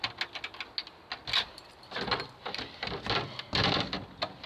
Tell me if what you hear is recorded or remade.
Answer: recorded